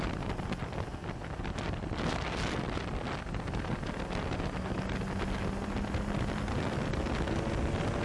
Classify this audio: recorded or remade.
recorded